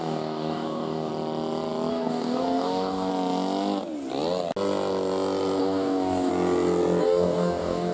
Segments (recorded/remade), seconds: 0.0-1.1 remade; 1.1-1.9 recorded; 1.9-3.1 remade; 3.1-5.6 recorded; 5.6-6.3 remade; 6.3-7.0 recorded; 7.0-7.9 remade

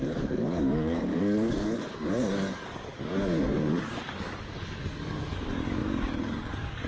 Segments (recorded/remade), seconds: 0.0-6.9 remade

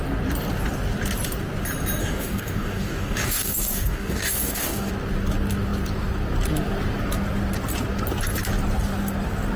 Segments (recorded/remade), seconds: 0.0-2.0 recorded; 2.0-4.9 remade; 4.9-9.6 recorded

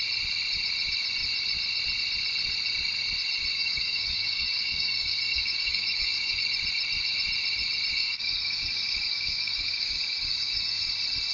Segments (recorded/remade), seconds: 0.0-3.5 recorded; 3.5-6.4 remade; 6.4-8.0 recorded; 8.0-10.9 remade; 10.9-11.3 recorded

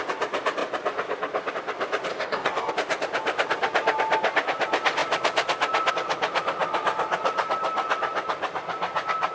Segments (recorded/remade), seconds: 0.0-2.1 recorded; 2.1-2.7 remade; 2.7-9.3 recorded

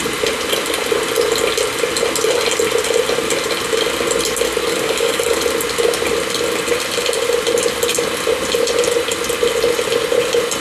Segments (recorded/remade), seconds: 0.0-4.7 recorded; 4.7-5.4 remade; 5.4-10.6 recorded